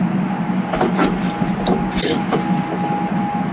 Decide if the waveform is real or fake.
real